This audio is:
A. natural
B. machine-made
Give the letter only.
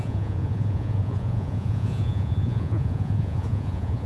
B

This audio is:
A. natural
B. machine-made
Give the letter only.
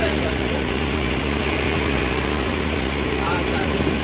B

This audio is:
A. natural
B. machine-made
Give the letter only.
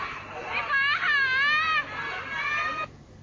A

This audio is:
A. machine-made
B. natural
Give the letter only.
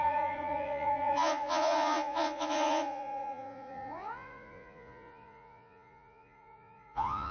A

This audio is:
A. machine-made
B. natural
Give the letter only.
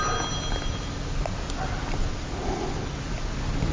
B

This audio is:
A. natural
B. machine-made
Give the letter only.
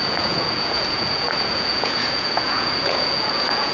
B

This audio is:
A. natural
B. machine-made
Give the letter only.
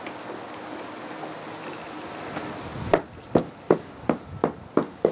A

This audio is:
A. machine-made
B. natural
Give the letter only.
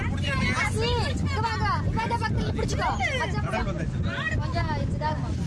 B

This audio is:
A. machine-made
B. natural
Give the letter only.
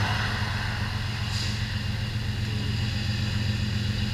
B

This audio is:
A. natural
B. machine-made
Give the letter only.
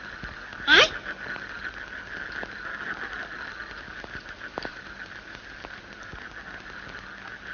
A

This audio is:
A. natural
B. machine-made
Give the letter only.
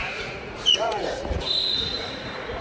B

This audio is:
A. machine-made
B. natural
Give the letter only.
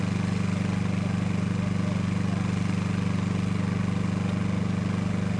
B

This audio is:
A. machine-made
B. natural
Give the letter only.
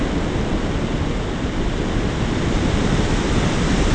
B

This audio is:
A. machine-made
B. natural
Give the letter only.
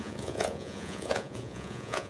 A